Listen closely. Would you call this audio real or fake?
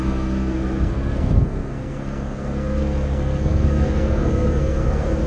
fake